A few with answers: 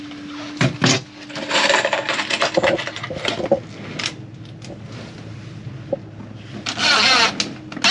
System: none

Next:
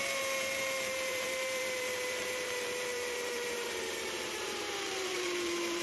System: vocoder, BigVGAN v2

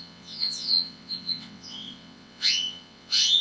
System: vocoder, WaveNeXt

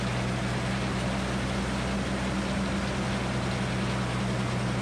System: none